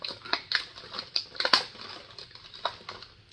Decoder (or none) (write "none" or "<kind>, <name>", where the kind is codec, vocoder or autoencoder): none